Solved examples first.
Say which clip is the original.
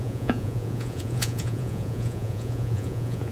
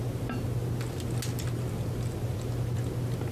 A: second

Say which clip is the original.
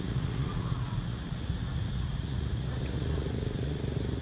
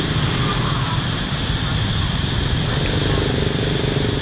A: second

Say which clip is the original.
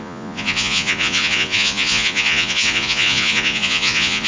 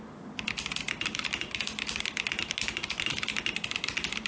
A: second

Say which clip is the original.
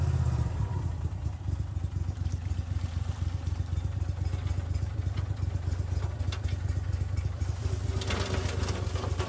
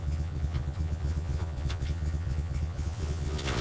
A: first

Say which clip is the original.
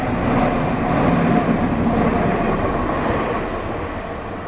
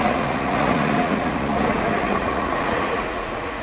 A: first